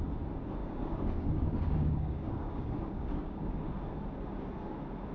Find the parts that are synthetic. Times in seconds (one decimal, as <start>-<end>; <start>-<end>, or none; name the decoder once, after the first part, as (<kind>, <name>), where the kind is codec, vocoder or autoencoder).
0.6-3.7 (codec, DAC)